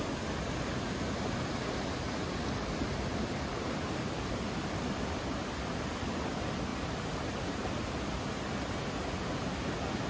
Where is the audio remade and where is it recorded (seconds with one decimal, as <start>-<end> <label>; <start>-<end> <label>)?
0.0-2.2 recorded; 2.2-4.9 remade; 4.9-10.1 recorded